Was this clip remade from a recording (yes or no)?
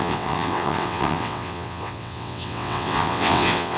yes